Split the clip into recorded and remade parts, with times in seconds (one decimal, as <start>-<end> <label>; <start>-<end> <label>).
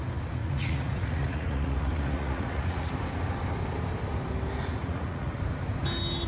0.0-0.4 recorded; 0.4-2.9 remade; 2.9-4.8 recorded; 4.8-5.4 remade; 5.4-6.3 recorded